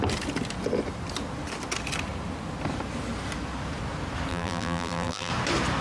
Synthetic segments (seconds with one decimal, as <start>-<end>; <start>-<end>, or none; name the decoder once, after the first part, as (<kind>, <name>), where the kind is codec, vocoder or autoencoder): 4.3-5.3 (vocoder, BigVGAN v2)